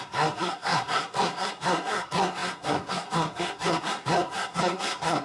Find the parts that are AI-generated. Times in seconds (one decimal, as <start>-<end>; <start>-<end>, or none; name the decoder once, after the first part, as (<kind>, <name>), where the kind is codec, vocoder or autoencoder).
0.0-5.2 (codec, SNAC)